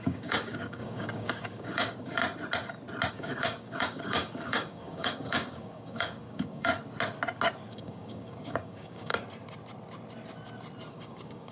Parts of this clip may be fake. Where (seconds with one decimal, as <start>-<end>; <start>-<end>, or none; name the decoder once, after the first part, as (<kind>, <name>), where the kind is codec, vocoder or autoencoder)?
0.0-2.2 (codec, DAC); 3.1-6.7; 7.7-9.1; 10.9-11.5